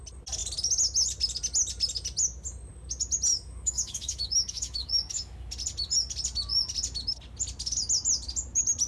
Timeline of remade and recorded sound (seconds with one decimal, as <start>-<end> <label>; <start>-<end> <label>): 0.0-3.3 recorded; 3.3-5.5 remade; 5.5-8.9 recorded

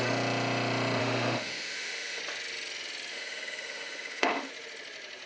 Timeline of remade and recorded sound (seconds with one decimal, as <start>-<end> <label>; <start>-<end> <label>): 0.0-1.0 recorded; 1.0-2.2 remade; 2.2-3.1 recorded; 3.1-4.5 remade; 4.5-5.3 recorded

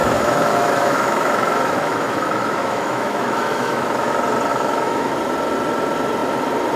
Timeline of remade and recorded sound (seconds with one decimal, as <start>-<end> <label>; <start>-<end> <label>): 0.0-4.1 remade; 4.1-4.5 recorded; 4.5-5.1 remade; 5.1-6.8 recorded